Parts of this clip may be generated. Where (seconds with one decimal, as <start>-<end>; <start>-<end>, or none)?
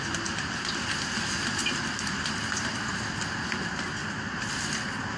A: none